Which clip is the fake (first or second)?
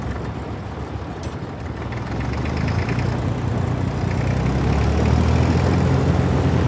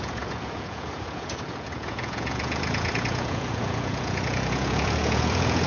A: second